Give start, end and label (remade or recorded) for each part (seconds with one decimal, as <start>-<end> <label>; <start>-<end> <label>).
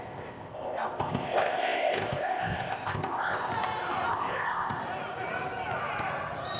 0.0-3.5 remade; 3.5-4.1 recorded; 4.1-4.8 remade; 4.8-6.6 recorded